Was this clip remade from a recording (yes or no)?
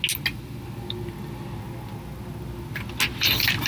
no